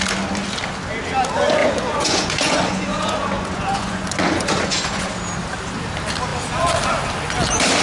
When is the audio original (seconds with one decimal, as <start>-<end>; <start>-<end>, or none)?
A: 0.0-1.6; 5.1-7.8